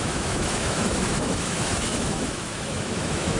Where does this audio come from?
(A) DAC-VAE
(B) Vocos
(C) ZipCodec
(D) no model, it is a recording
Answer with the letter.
A